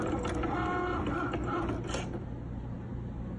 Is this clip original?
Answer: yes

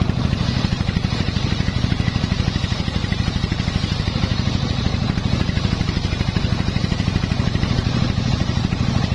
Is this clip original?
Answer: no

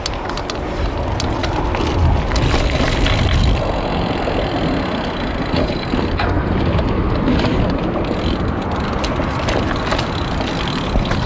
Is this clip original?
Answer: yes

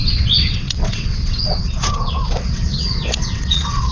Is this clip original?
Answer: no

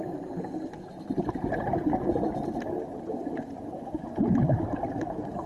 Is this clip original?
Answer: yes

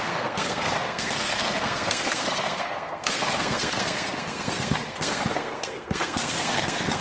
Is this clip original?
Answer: no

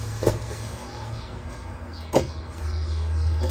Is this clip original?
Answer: no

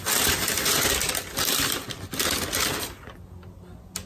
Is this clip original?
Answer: yes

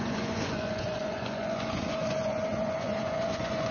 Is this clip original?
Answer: no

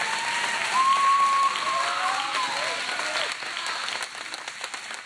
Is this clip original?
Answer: yes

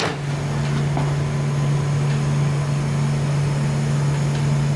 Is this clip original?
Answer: yes